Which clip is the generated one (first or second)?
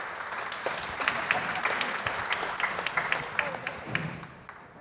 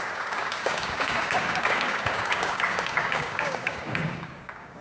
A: second